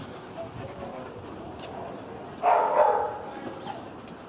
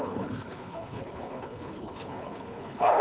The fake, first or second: second